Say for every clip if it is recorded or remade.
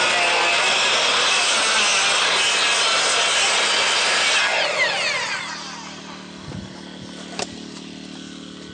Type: recorded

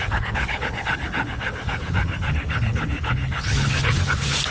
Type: remade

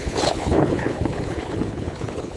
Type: remade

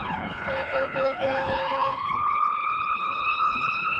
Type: remade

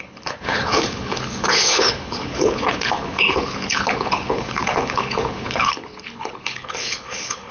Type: remade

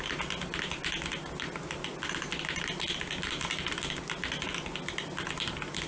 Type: recorded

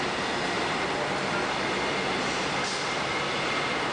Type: recorded